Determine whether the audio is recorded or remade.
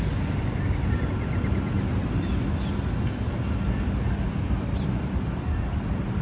recorded